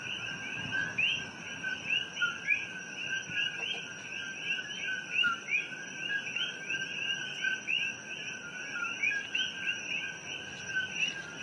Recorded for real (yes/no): yes